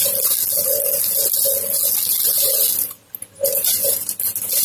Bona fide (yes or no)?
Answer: yes